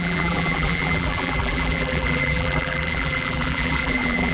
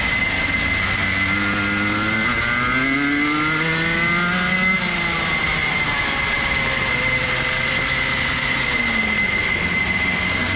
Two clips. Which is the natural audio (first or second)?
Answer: second